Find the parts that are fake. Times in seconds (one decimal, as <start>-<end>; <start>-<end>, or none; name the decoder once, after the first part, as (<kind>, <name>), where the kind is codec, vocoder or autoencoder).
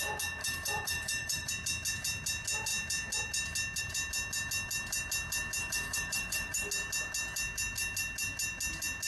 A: 0.4-1.5 (autoencoder, DAC-VAE); 5.6-6.7